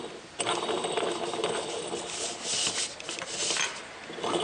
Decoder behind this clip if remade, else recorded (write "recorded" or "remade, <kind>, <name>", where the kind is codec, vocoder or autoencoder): recorded